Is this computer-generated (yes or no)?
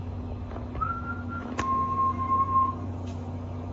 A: yes